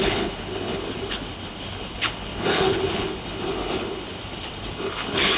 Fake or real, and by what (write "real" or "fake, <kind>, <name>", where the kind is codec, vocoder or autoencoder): fake, codec, HILCodec